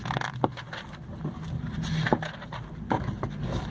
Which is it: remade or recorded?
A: recorded